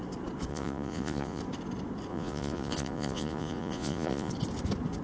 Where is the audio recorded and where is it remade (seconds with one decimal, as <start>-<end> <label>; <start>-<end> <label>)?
0.0-0.5 recorded; 0.5-1.4 remade; 1.4-2.1 recorded; 2.1-4.3 remade; 4.3-5.0 recorded